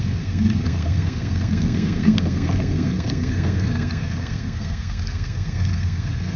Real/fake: fake